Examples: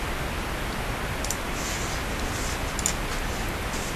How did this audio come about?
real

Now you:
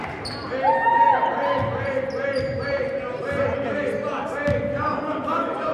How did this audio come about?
real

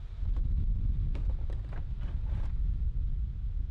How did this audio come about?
real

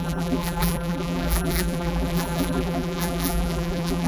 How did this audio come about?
fake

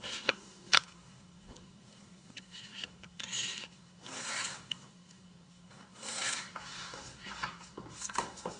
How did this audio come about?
fake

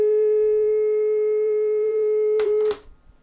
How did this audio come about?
fake